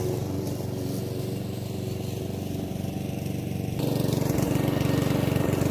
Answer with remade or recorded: recorded